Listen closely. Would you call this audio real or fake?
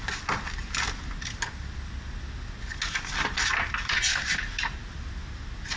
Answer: real